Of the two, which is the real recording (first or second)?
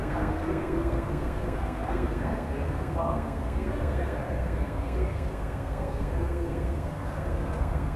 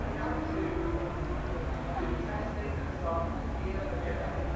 second